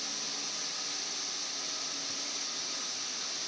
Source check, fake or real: real